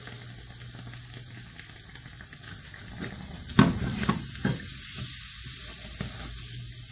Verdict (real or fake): real